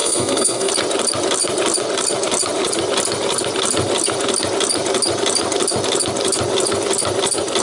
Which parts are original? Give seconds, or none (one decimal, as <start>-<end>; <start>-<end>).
0.7-7.6